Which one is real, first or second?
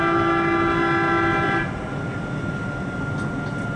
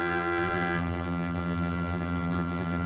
first